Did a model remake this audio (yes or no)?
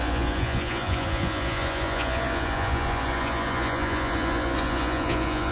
yes